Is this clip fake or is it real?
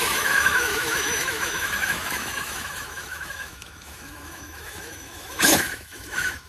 fake